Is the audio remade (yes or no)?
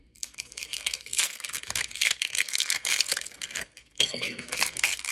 yes